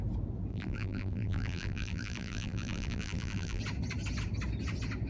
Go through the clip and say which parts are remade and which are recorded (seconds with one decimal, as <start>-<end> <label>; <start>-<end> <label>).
0.0-0.5 recorded; 0.5-3.6 remade; 3.6-5.1 recorded